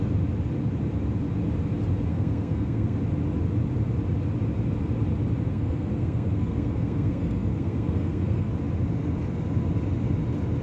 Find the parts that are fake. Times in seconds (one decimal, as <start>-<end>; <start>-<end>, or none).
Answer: 2.1-3.0; 5.5-8.5